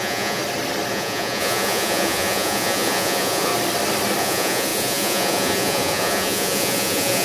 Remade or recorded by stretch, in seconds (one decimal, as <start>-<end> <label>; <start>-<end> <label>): 0.0-0.4 remade; 0.4-0.9 recorded; 0.9-3.5 remade; 3.5-4.2 recorded; 4.2-7.2 remade